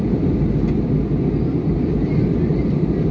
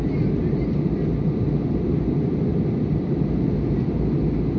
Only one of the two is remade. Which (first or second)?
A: first